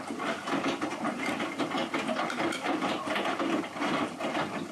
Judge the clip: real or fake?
real